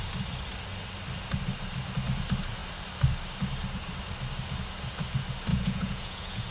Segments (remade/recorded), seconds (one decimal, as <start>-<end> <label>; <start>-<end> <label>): 0.0-5.5 recorded; 5.5-6.5 remade